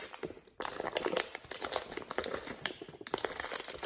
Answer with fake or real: real